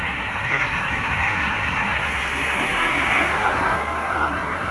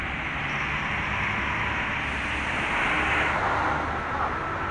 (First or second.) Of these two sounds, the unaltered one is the second